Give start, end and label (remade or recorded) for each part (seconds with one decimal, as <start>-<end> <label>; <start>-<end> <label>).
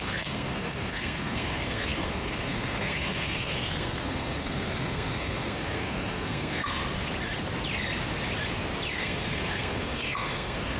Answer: 0.0-6.8 remade; 6.8-8.9 recorded; 8.9-10.8 remade